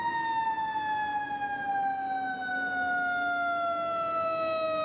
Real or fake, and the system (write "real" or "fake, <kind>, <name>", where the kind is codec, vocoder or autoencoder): real